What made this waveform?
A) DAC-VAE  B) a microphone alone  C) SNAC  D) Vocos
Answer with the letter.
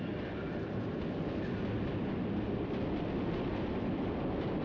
B